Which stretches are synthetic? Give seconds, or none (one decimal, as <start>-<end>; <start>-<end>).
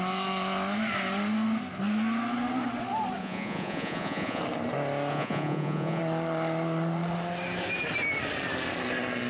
3.2-4.4; 5.1-6.0